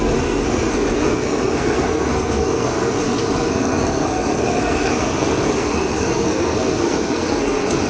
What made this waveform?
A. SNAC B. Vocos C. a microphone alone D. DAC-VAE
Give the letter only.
A